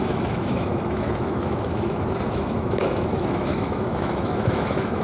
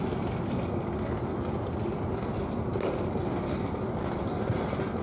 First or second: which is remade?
first